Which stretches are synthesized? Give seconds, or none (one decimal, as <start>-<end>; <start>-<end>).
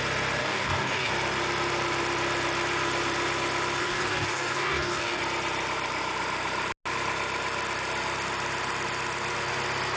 0.4-1.1; 3.8-5.2